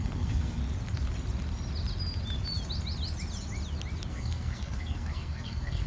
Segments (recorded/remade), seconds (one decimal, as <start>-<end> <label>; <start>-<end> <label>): 0.0-0.6 remade; 0.6-4.1 recorded; 4.1-5.9 remade